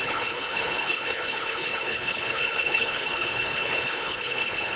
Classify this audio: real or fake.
fake